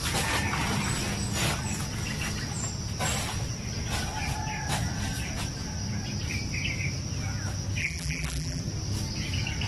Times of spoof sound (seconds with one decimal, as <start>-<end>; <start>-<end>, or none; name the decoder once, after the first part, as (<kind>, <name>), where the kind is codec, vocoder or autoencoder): 7.8-8.6 (vocoder, BigVGAN v2)